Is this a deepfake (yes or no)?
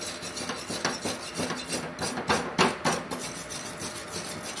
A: no